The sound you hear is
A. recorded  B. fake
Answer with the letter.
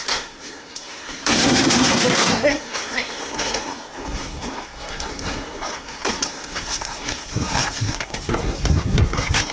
B